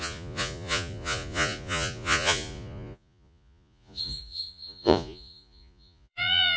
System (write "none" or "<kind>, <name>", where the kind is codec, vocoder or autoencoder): vocoder, Vocos